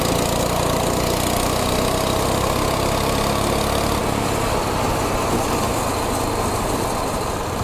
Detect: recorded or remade recorded